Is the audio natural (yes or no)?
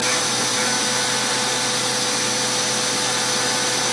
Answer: yes